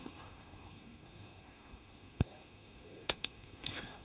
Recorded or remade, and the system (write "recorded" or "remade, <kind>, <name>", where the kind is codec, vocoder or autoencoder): remade, codec, SNAC